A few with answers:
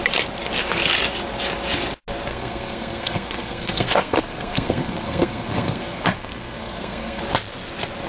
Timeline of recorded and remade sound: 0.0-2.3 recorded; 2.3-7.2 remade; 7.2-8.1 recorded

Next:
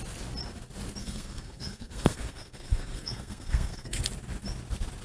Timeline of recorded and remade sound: 0.0-1.0 recorded; 1.0-4.0 remade; 4.0-5.0 recorded

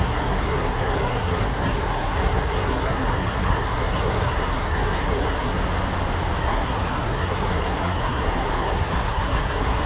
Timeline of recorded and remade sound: 0.0-5.6 remade; 5.6-6.4 recorded; 6.4-9.9 remade